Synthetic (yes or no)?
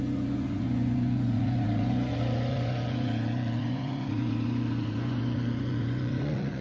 yes